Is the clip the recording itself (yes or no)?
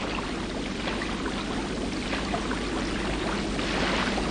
yes